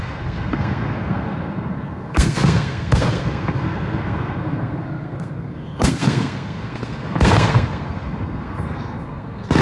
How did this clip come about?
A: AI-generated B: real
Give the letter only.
A